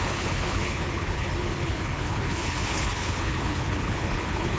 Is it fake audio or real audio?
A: fake